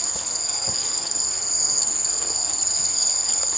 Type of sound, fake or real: fake